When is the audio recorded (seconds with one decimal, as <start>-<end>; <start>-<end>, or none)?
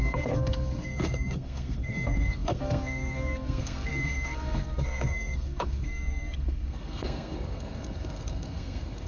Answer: none